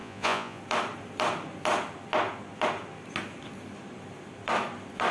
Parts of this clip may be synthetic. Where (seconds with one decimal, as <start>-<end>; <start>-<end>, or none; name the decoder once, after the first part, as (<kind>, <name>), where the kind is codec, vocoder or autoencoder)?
0.0-0.6 (vocoder, Vocos)